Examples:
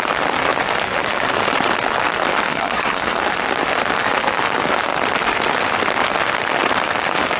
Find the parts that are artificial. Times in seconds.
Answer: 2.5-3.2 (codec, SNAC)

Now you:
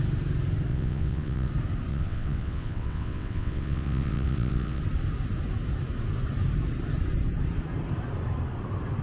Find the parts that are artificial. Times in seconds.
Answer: 0.7-1.5 (vocoder, WaveNeXt); 1.9-4.8

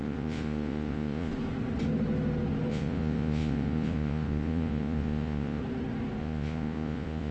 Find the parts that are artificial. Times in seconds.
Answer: 0.0-1.3 (vocoder, Vocos); 2.7-5.6; 6.2-7.3

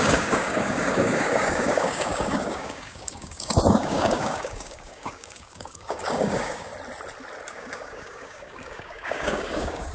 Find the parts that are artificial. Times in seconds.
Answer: 0.0-6.7 (codec, DAC); 7.5-9.9

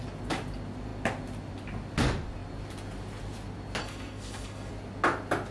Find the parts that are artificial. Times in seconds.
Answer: 3.8-4.7 (codec, SNAC)

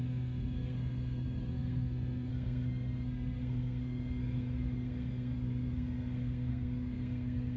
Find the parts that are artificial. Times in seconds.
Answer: 0.0-7.6 (codec, SNAC)

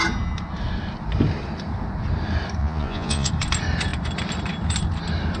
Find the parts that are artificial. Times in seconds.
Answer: 2.6-3.3 (vocoder, Vocos)